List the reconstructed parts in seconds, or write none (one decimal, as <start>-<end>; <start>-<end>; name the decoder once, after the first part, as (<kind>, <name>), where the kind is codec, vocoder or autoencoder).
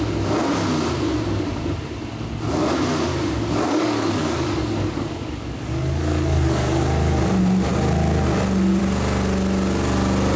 3.1-7.2 (codec, DAC)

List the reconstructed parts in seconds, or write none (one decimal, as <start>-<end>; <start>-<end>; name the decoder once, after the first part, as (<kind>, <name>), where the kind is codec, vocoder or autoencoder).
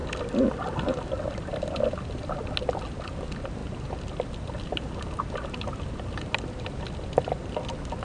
none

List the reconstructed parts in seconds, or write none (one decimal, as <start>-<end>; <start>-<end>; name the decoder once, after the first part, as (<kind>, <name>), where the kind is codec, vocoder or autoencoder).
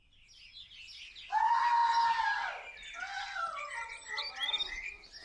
none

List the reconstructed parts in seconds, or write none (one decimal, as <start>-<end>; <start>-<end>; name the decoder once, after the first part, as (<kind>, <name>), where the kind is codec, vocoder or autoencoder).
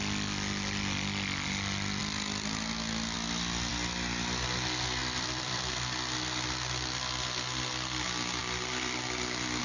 5.0-5.8 (vocoder, BigVGAN v2); 8.4-9.6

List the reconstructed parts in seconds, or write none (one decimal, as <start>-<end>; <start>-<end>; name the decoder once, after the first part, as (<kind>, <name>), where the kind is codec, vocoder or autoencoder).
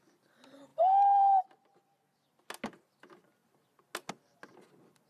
none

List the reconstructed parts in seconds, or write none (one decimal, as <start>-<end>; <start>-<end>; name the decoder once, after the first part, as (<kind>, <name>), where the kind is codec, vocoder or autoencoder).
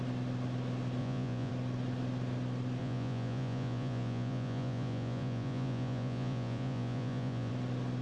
1.0-1.5 (vocoder, Vocos); 2.8-7.5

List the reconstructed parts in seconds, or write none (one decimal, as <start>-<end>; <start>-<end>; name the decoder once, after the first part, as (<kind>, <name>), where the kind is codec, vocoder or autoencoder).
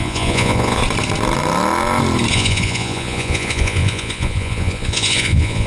0.0-0.8 (vocoder, Vocos); 2.3-5.7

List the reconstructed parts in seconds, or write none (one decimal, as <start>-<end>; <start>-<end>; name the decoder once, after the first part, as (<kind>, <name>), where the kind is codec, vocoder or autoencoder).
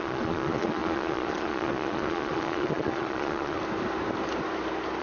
0.0-3.6 (vocoder, Vocos)